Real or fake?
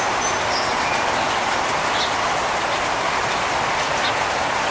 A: real